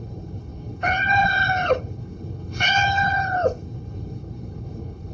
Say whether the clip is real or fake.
fake